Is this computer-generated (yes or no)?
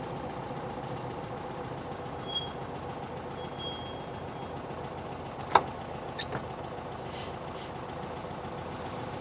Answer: no